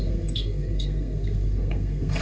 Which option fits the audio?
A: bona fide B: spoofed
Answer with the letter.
B